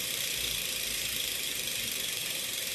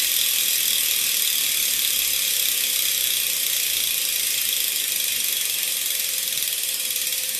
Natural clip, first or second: second